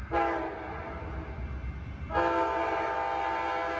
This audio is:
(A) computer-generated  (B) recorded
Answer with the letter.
B